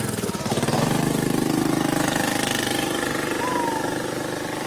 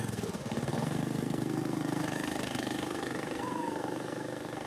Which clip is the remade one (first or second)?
second